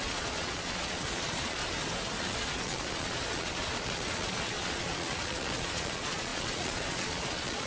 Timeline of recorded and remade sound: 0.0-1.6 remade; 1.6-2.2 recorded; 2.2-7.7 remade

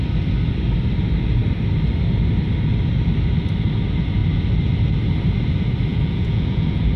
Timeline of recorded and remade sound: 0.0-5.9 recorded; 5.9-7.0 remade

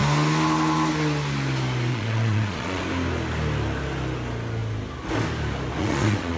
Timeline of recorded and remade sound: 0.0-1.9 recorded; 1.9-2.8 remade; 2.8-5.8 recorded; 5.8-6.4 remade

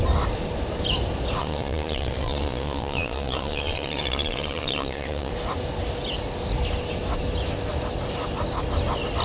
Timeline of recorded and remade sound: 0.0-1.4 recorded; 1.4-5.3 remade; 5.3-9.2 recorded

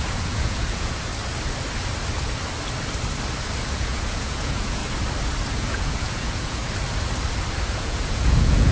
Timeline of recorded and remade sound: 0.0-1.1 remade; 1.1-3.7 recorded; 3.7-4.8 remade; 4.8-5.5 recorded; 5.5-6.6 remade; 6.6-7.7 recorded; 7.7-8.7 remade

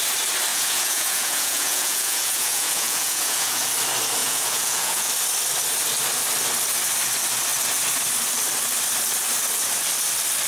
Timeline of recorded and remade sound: 0.0-0.5 recorded; 0.5-3.7 remade; 3.7-4.2 recorded; 4.2-5.1 remade; 5.1-10.5 recorded

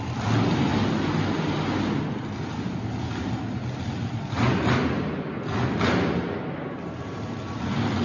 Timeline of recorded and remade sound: 0.0-8.0 recorded